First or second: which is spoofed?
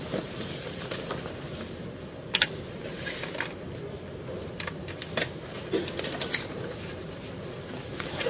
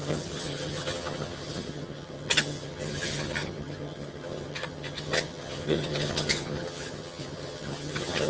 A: second